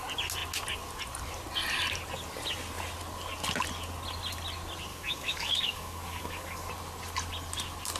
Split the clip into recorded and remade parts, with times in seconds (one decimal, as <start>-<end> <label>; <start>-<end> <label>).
0.0-4.9 recorded; 4.9-6.7 remade; 6.7-8.0 recorded